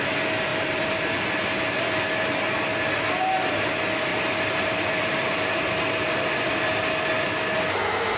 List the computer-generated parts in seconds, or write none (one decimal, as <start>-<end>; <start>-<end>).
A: 0.5-1.9; 4.1-6.3

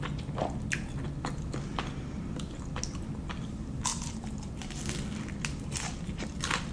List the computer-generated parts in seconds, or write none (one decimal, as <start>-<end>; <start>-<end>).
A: 3.9-4.8